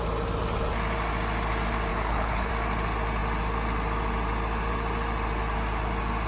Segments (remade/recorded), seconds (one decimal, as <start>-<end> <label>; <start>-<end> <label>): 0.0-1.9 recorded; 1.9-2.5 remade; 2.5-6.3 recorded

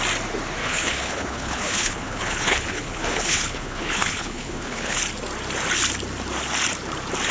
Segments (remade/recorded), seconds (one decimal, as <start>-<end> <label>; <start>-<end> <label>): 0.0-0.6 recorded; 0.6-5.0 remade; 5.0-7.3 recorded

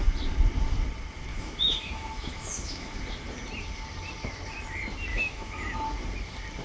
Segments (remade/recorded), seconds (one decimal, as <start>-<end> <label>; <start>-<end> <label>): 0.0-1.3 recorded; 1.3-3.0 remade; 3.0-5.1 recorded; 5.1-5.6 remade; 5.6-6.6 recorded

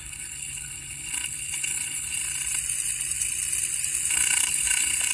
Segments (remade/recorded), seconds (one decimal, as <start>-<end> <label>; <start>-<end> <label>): 0.0-2.2 remade; 2.2-4.1 recorded; 4.1-5.1 remade